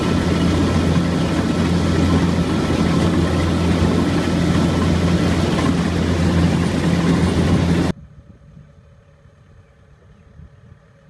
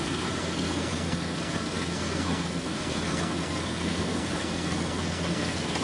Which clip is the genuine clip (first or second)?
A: first